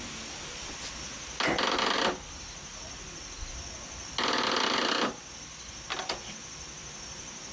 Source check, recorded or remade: recorded